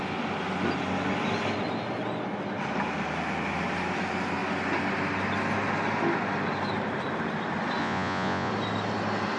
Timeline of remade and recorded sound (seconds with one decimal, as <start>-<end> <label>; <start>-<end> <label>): 0.0-7.8 recorded; 7.8-8.5 remade; 8.5-9.4 recorded